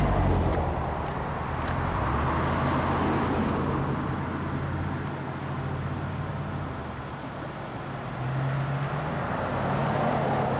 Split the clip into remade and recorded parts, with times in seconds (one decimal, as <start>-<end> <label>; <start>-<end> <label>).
0.0-10.6 recorded